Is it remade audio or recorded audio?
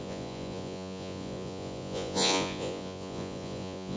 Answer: remade